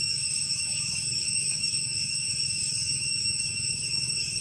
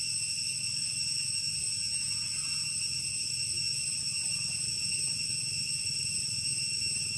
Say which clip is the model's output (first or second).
first